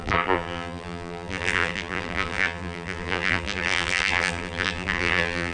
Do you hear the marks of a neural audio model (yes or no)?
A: yes